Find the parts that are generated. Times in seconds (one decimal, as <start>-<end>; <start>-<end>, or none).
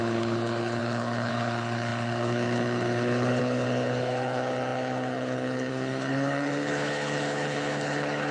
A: 0.0-8.3